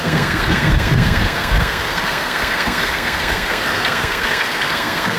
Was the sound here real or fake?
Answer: fake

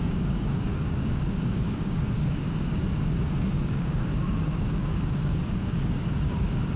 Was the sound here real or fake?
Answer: fake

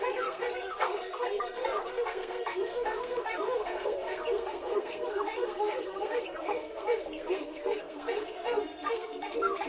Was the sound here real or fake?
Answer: fake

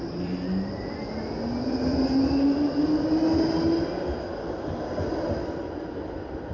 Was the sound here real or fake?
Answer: real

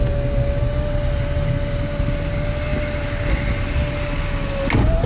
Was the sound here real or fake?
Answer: real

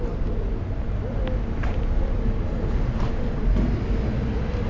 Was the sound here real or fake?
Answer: real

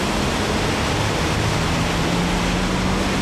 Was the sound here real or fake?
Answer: real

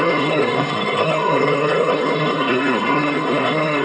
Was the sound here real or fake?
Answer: fake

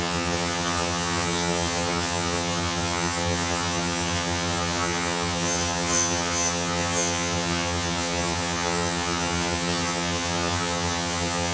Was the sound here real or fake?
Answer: fake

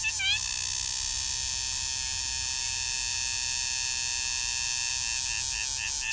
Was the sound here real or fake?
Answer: real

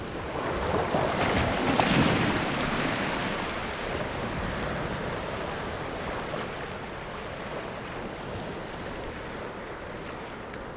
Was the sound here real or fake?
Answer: real